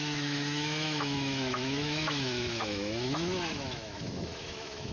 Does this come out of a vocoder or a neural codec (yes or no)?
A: yes